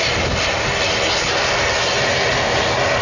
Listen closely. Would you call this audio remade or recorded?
recorded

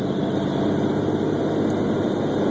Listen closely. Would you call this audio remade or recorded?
recorded